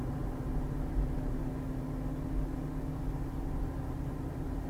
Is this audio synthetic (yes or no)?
no